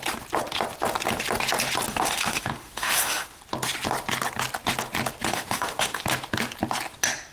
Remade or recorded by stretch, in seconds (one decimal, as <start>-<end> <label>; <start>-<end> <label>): 0.0-1.9 recorded; 1.9-3.4 remade; 3.4-5.3 recorded; 5.3-6.0 remade; 6.0-7.3 recorded